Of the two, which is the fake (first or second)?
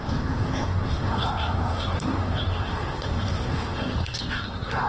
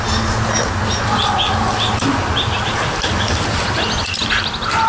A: first